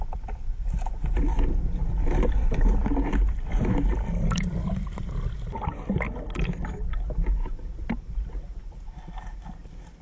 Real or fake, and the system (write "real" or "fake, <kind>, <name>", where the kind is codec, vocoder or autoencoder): real